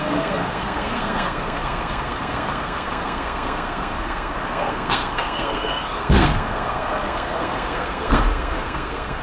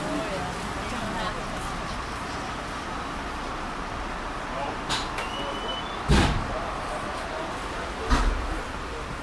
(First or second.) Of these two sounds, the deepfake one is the first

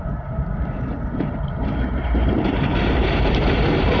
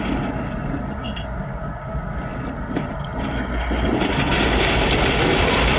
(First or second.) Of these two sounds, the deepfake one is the first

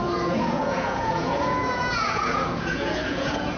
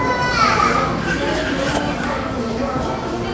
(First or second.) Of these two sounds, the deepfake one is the first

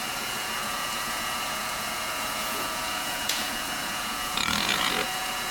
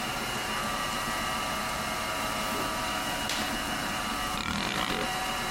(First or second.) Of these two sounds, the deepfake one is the first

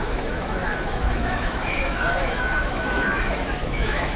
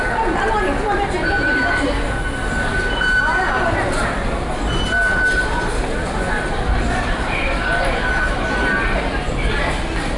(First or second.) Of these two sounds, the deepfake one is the first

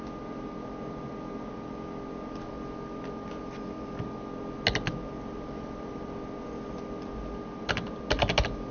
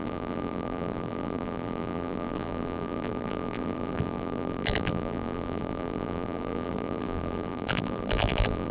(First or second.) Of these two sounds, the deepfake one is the second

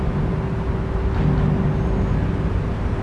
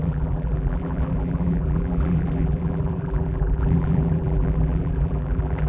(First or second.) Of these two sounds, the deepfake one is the second